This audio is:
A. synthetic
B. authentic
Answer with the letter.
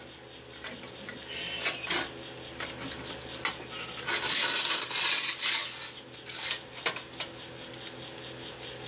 B